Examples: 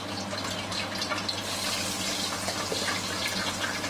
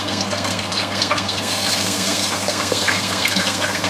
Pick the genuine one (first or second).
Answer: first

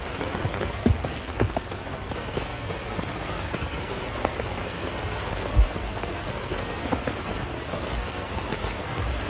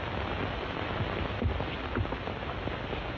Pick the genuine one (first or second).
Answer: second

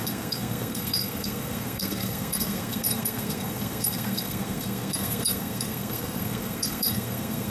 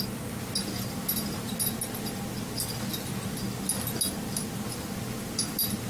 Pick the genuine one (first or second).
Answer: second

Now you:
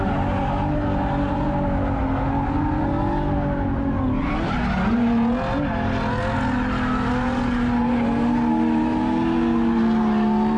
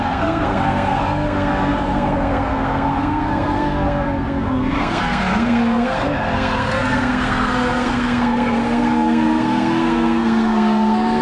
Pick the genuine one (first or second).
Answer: first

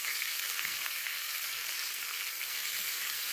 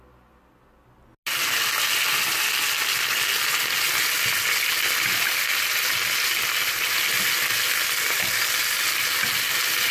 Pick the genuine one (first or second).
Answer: second